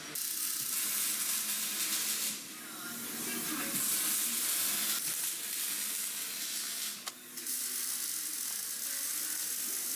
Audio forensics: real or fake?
real